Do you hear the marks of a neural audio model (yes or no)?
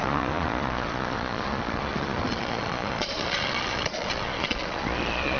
yes